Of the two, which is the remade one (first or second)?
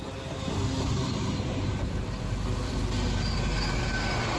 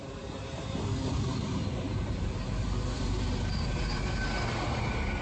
second